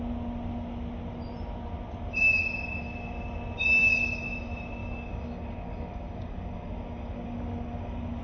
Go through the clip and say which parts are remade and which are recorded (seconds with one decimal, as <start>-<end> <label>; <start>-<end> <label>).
0.0-4.8 recorded; 4.8-8.2 remade